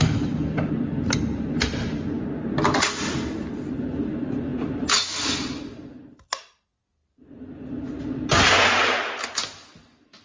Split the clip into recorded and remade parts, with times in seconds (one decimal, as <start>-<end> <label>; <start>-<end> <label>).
0.0-10.2 recorded